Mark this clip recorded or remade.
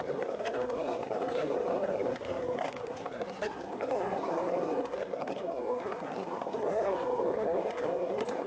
remade